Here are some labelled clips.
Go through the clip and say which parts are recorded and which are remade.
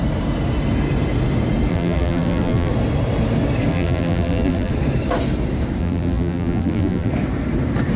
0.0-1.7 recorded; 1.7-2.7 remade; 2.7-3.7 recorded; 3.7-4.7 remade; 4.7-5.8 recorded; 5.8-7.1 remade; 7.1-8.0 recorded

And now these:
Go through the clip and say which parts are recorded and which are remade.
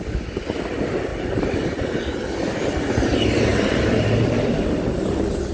0.0-1.1 recorded; 1.1-1.6 remade; 1.6-3.5 recorded; 3.5-4.8 remade; 4.8-5.5 recorded